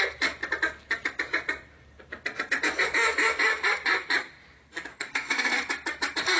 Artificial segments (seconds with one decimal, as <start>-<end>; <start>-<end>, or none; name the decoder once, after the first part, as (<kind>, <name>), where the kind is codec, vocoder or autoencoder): 4.9-5.6 (codec, SNAC)